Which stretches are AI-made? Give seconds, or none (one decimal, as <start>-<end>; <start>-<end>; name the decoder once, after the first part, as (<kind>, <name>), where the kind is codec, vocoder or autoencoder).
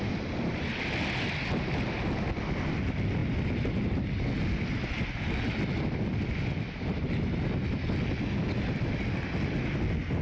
none